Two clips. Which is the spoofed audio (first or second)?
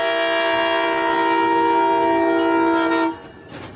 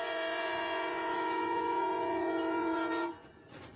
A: second